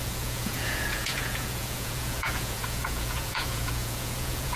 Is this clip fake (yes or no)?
yes